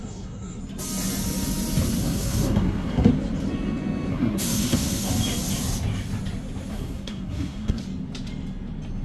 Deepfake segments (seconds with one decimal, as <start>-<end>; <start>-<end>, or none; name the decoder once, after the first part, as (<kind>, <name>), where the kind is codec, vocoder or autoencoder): 0.0-0.6 (codec, SNAC); 2.0-3.1; 4.1-5.1; 6.7-7.8